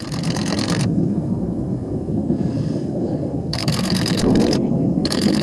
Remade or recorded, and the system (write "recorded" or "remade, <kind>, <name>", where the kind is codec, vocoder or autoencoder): remade, codec, SNAC